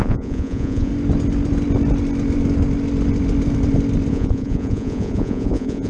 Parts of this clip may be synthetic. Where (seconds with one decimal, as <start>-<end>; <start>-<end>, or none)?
0.0-0.9; 4.1-5.9